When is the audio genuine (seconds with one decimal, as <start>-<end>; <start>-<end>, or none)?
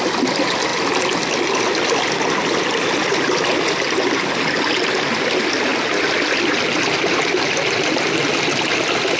0.0-9.2